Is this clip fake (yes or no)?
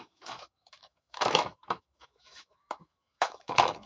yes